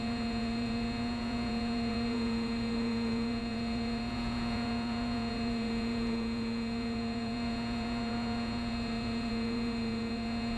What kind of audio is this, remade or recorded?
remade